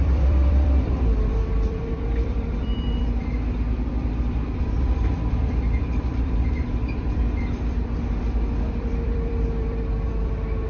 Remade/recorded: remade